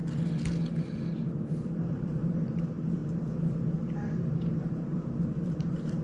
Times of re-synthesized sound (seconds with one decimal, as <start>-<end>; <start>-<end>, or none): 1.5-3.0; 4.6-6.0